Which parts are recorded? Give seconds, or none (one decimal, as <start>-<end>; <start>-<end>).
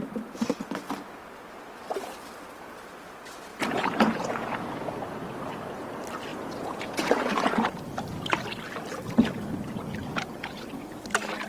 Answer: 0.0-3.5; 4.9-6.3; 8.0-10.0; 11.0-11.5